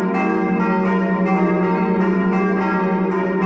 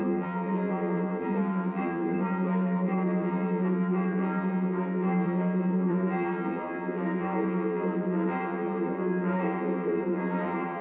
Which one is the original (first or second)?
first